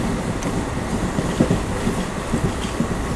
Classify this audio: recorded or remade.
recorded